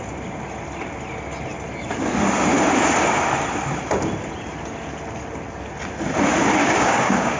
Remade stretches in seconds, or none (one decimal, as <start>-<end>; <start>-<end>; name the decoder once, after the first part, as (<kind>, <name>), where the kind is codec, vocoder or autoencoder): 6.6-7.4 (codec, DAC)